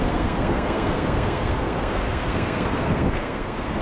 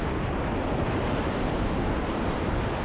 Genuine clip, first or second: second